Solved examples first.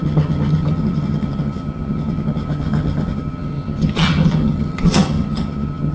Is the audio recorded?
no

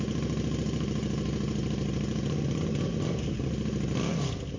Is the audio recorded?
yes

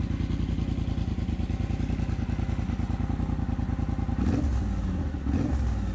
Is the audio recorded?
yes